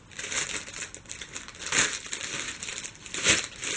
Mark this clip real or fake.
real